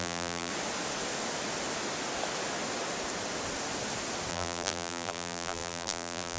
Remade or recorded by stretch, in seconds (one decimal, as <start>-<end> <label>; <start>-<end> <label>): 0.0-0.5 remade; 0.5-4.3 recorded; 4.3-6.4 remade